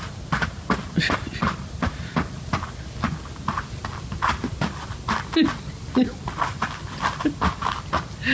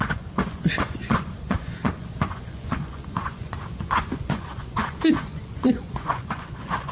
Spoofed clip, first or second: second